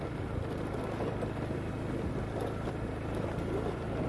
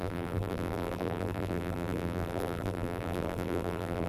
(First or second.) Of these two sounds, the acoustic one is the first